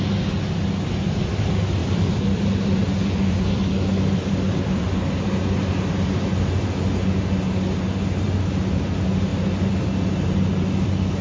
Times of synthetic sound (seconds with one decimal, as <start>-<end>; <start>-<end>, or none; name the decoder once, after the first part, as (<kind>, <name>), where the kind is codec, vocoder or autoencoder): 1.8-5.4 (vocoder, BigVGAN v2); 9.3-11.2